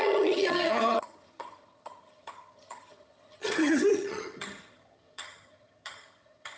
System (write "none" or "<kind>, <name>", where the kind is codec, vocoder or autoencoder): vocoder, HiFi-GAN